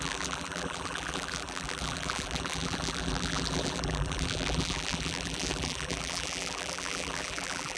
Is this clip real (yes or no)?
no